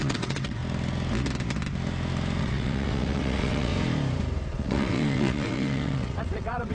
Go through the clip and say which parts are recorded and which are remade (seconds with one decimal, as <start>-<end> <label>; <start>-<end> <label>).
0.0-0.6 remade; 0.6-2.4 recorded; 2.4-3.7 remade; 3.7-4.5 recorded; 4.5-6.7 remade